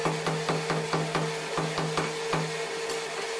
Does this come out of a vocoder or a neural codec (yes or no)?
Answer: no